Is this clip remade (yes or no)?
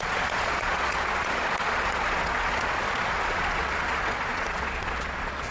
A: yes